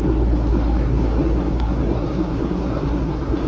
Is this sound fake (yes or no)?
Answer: yes